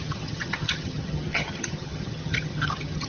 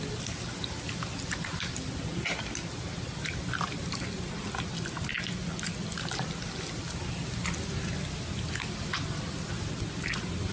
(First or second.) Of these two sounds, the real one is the second